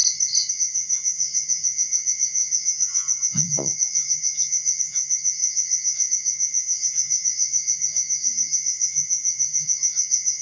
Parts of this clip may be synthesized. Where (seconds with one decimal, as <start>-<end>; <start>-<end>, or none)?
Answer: 0.5-10.4